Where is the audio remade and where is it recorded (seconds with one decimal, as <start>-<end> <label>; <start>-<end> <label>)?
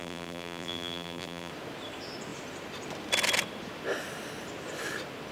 0.0-1.5 remade; 1.5-5.3 recorded